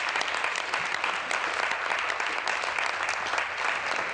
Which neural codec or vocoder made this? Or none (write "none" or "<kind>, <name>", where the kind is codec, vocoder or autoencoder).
none